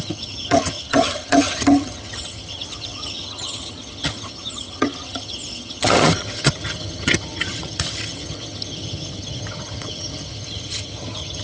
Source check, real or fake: fake